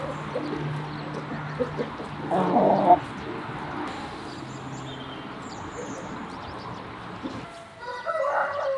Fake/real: real